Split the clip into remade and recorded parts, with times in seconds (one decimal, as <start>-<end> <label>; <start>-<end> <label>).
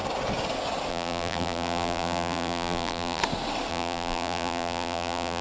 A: 0.0-0.9 recorded; 0.9-3.2 remade; 3.2-3.7 recorded; 3.7-5.4 remade